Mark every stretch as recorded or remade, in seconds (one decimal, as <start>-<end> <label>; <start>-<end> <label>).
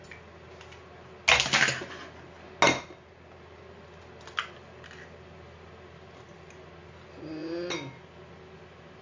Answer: 0.0-9.0 recorded